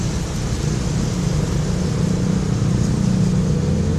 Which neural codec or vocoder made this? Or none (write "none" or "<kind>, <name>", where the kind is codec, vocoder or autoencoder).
none